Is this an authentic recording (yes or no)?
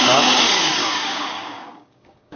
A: no